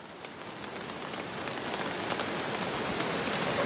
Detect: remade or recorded recorded